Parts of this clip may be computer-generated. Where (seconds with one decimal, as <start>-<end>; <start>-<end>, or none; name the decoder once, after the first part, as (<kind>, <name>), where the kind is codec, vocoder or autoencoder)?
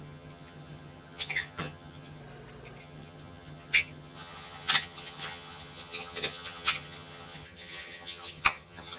0.0-2.2 (vocoder, HiFi-GAN); 2.8-9.0